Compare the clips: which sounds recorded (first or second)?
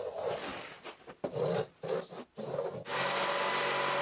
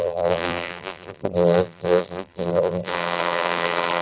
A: first